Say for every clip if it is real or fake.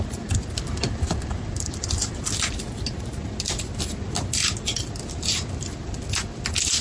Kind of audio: real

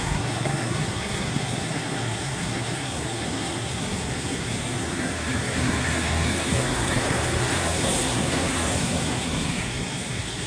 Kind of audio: fake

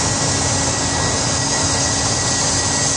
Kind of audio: real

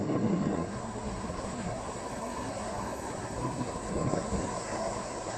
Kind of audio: fake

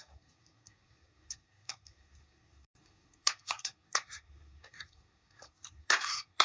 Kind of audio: fake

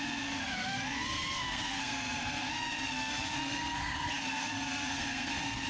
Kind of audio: fake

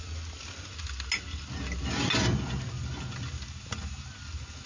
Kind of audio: real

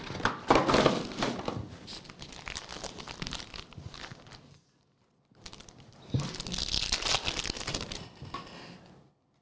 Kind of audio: real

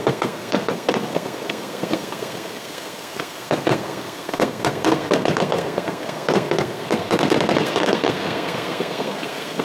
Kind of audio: fake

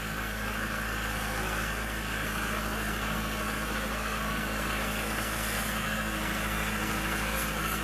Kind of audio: fake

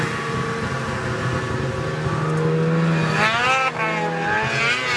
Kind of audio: real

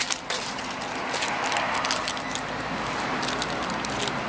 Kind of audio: real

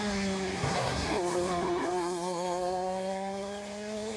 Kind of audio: fake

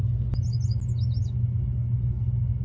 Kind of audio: real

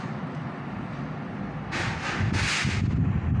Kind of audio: real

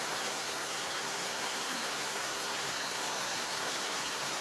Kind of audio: fake